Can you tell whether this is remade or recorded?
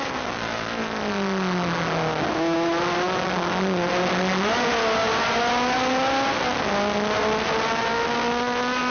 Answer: recorded